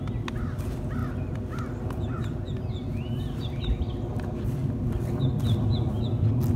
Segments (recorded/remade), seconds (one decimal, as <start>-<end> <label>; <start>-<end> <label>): 0.0-6.6 recorded